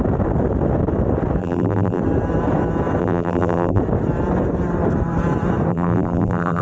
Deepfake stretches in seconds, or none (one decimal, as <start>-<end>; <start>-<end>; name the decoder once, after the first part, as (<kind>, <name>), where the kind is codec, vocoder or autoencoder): 1.4-2.0 (vocoder, BigVGAN v2); 3.0-3.8; 5.7-6.6